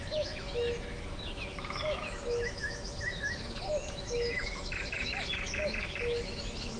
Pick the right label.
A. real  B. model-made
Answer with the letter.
B